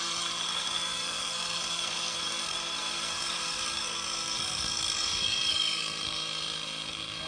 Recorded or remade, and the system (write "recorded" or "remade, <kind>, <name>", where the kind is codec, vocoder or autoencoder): remade, codec, SNAC